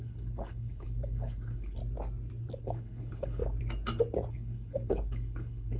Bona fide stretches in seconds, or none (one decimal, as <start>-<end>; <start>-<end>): 1.8-2.6; 3.4-4.3